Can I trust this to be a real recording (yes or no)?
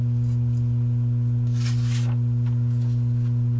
yes